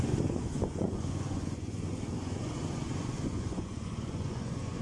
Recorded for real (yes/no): no